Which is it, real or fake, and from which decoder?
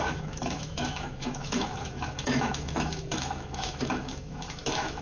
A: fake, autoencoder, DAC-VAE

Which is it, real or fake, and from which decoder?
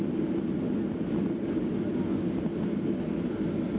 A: real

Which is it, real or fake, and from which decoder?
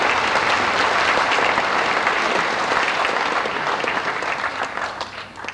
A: real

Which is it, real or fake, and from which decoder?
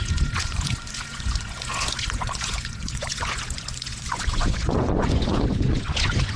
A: fake, vocoder, Vocos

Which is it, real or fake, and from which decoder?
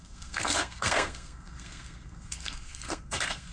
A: fake, codec, SNAC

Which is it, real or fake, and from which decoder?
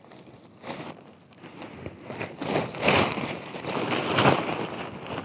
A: real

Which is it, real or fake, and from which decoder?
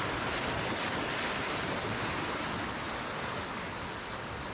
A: real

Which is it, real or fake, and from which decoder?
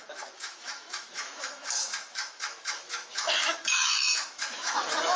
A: fake, autoencoder, DAC-VAE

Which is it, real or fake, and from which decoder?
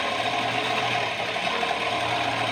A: real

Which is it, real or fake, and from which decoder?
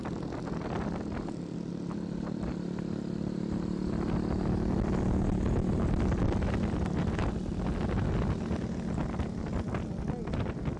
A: real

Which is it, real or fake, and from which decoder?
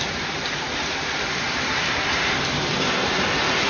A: fake, vocoder, BigVGAN v2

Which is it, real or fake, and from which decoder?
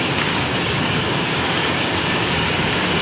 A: fake, codec, DAC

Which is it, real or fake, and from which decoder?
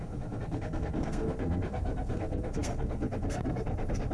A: fake, codec, SNAC